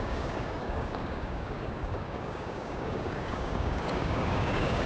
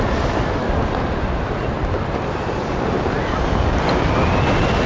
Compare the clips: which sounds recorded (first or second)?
second